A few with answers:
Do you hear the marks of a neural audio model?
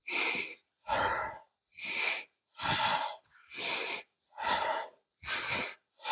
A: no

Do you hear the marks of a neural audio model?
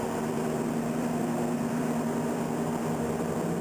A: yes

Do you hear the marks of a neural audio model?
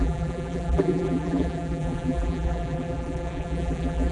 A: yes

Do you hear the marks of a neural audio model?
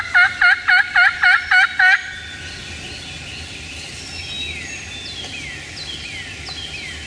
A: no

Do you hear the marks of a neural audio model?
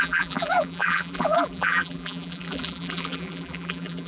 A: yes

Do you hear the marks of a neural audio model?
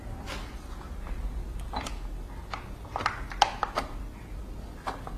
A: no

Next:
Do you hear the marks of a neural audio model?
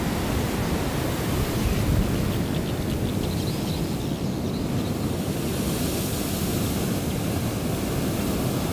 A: no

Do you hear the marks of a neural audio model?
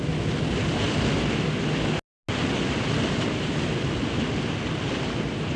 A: no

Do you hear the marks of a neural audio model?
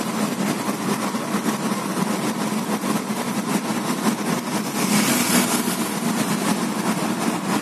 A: no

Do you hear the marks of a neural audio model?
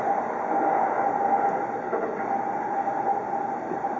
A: no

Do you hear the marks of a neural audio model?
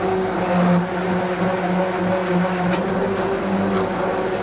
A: no